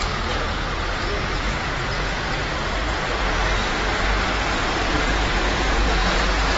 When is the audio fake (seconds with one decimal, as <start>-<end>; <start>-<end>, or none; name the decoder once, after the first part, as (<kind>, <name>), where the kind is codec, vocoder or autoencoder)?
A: 0.0-3.4 (vocoder, Vocos); 4.9-6.6